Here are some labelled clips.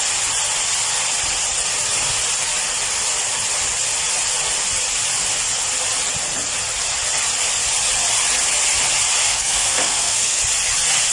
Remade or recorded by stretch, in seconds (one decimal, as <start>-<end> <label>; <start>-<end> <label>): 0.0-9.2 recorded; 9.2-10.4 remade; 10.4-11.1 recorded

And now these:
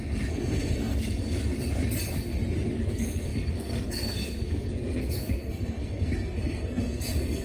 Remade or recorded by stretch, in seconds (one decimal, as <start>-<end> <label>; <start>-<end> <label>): 0.0-1.4 remade; 1.4-2.9 recorded; 2.9-7.4 remade

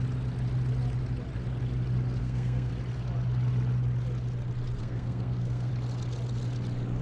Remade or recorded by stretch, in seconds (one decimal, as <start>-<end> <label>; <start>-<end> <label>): 0.0-2.2 recorded; 2.2-2.7 remade; 2.7-4.8 recorded; 4.8-5.7 remade; 5.7-7.0 recorded

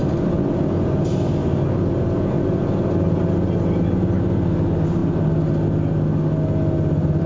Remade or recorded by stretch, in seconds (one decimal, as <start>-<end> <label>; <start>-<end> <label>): 0.0-7.3 recorded

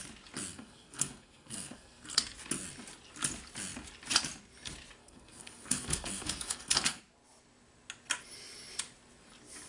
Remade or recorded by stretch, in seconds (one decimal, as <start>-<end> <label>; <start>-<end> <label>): 0.0-0.5 recorded; 0.5-2.2 remade; 2.2-5.0 recorded; 5.0-7.0 remade; 7.0-9.7 recorded

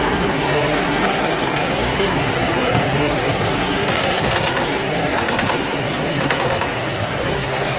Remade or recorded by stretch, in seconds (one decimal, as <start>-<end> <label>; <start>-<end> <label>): 0.0-7.8 remade

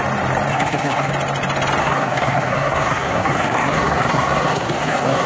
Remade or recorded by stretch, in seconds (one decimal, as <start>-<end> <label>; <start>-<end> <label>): 0.0-0.5 recorded; 0.5-1.1 remade; 1.1-1.8 recorded; 1.8-5.3 remade